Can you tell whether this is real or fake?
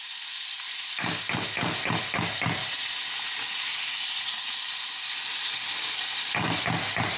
real